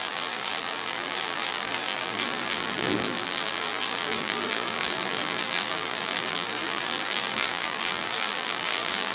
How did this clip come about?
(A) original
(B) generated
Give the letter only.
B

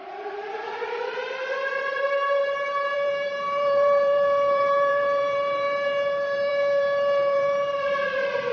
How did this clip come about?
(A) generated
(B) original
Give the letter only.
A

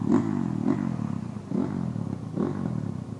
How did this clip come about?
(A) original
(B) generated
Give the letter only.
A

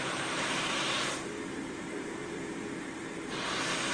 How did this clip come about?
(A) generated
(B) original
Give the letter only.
A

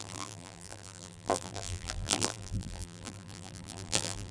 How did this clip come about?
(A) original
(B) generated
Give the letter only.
B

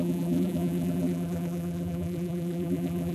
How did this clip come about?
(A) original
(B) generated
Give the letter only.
B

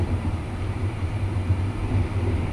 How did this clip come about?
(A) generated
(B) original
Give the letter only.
A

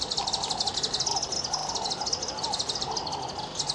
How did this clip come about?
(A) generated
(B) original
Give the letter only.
B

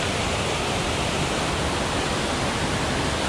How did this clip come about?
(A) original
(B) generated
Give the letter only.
A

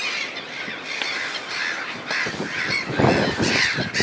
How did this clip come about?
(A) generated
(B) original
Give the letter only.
A